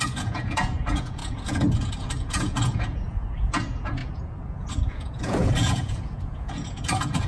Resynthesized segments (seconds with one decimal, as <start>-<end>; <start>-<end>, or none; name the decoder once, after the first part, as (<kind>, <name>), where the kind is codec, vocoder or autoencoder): 0.0-7.3 (vocoder, Vocos)